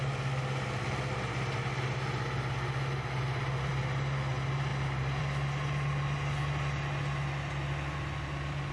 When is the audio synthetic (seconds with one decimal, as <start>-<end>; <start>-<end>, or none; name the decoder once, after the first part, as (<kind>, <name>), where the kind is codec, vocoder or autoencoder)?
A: none